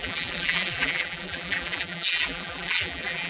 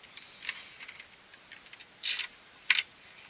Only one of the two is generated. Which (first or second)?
first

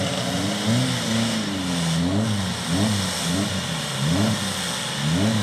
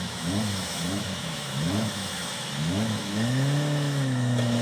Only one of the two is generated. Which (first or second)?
second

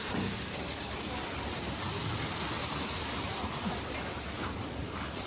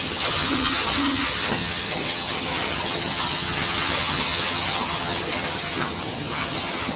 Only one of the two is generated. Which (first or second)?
second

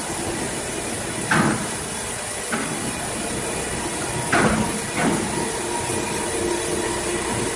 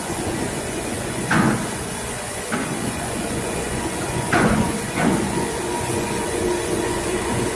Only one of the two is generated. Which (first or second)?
second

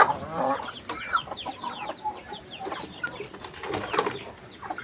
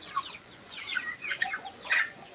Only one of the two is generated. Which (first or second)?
second